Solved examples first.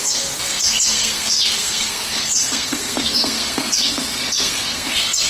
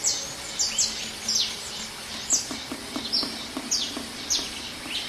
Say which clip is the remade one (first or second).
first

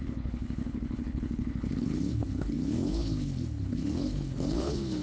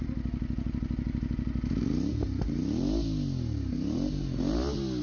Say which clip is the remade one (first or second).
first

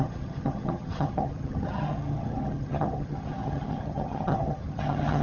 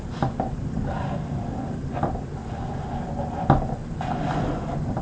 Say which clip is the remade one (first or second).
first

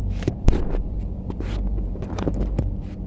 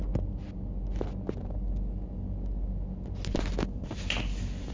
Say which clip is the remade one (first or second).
first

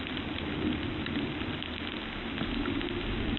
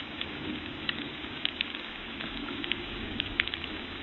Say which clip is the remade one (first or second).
second